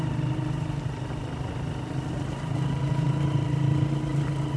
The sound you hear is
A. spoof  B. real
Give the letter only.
B